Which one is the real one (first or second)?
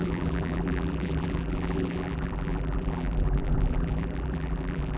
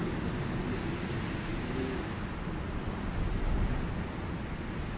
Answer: second